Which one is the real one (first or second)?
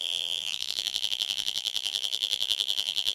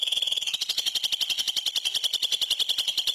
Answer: second